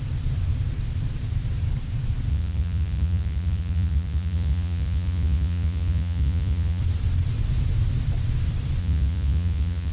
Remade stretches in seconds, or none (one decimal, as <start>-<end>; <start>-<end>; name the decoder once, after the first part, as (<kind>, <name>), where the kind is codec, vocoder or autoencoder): 2.3-6.8 (vocoder, Vocos); 8.8-9.9